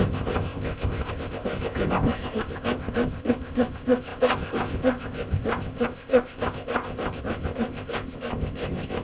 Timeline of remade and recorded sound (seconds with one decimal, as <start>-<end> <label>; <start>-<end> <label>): 0.0-9.0 remade